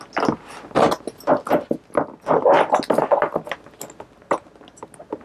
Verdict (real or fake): real